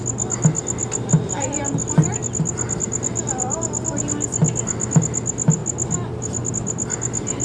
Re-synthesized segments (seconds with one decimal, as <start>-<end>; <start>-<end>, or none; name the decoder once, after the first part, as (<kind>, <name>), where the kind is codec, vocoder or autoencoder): none

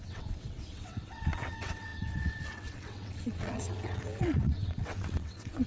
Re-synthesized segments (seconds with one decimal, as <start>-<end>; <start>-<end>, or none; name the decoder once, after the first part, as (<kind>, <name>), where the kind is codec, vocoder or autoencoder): 0.0-5.7 (vocoder, WaveNeXt)

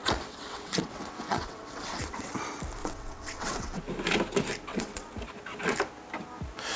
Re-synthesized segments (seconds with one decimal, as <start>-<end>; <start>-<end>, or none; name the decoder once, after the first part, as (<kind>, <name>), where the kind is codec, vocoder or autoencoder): 0.0-2.4 (vocoder, WaveNeXt); 2.8-3.8; 4.7-5.2

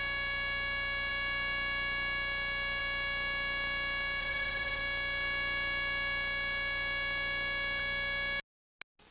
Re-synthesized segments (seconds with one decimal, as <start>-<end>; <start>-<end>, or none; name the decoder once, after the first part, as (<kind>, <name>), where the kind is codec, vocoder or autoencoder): 4.2-4.8 (vocoder, WaveNeXt)

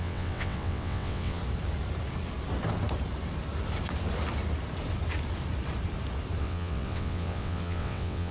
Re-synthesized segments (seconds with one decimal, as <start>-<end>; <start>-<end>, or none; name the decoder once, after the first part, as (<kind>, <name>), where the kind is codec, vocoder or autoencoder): 0.0-1.4 (vocoder, WaveNeXt); 6.4-8.3